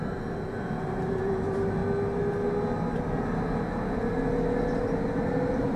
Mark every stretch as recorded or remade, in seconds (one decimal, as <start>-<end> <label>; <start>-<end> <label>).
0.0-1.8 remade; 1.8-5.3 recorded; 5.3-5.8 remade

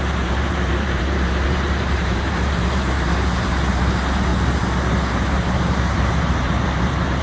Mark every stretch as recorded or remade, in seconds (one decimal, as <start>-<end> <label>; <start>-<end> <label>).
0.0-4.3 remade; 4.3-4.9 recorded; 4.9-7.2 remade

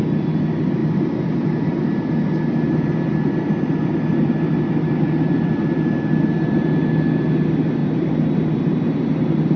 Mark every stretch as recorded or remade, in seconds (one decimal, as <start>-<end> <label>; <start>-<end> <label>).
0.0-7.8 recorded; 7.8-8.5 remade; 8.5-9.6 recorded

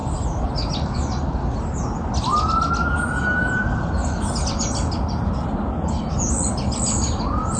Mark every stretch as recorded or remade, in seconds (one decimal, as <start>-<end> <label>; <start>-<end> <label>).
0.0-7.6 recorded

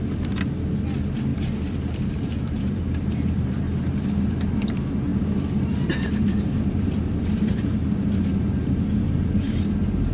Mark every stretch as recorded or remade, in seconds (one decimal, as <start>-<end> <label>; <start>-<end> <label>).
0.0-1.3 recorded; 1.3-4.5 remade; 4.5-5.1 recorded; 5.1-10.1 remade